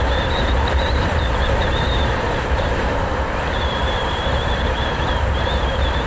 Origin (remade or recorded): remade